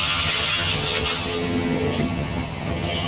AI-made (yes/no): yes